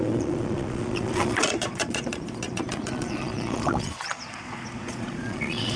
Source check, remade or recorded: remade